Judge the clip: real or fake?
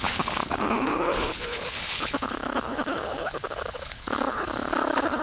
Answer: fake